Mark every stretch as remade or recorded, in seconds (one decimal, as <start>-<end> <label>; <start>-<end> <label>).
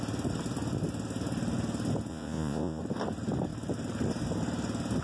0.0-2.1 recorded; 2.1-2.8 remade; 2.8-5.0 recorded